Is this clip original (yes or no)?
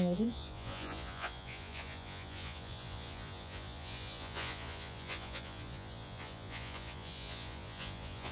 no